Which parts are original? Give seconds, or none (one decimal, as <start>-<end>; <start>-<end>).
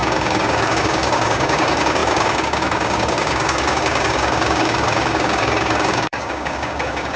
none